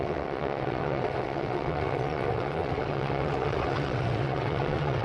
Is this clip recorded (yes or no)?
no